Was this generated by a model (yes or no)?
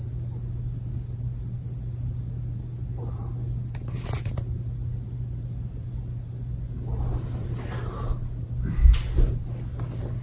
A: no